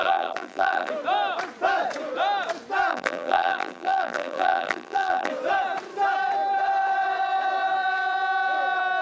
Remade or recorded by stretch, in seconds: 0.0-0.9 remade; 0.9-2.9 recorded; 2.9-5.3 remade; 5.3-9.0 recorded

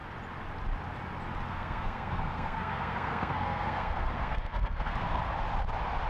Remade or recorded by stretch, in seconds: 0.0-1.5 recorded; 1.5-5.2 remade; 5.2-6.1 recorded